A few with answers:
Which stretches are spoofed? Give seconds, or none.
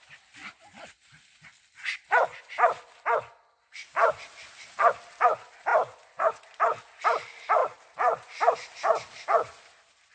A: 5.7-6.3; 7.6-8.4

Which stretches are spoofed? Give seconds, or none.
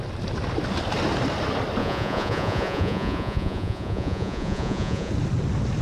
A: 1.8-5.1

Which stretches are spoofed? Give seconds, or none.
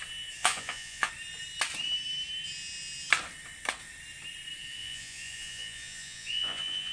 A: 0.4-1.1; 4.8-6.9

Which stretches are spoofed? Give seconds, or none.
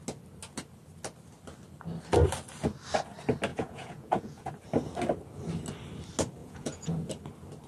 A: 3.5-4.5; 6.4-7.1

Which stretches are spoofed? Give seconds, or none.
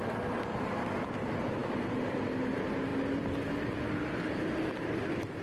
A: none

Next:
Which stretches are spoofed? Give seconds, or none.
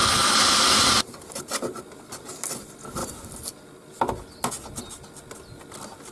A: 0.0-1.4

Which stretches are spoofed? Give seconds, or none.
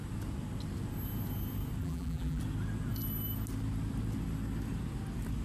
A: 1.8-2.4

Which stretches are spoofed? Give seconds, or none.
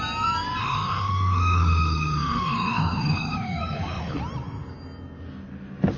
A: 0.6-4.2